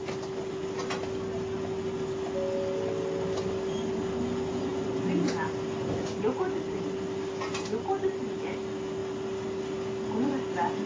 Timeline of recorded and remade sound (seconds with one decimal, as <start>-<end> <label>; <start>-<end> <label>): 0.0-10.9 recorded